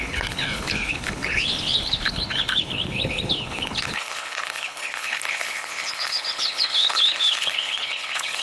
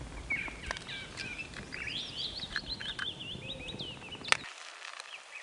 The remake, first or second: first